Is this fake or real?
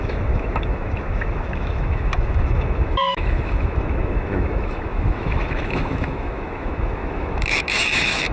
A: fake